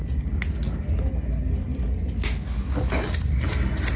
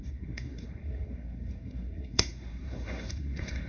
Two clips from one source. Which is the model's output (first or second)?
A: second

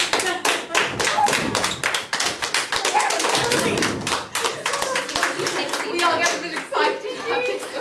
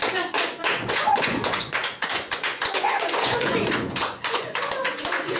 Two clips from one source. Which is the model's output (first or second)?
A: second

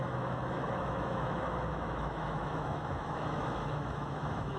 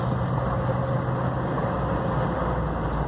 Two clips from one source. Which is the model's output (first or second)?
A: first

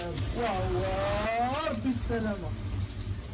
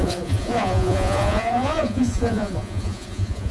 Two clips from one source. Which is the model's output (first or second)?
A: second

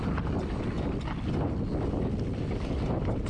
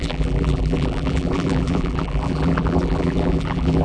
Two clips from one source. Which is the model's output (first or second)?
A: second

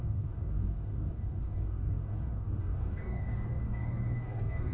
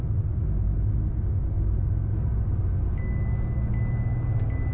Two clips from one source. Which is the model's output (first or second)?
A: first